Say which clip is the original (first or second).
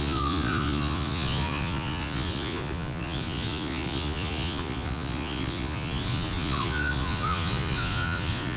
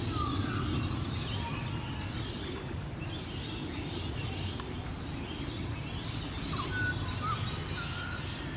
second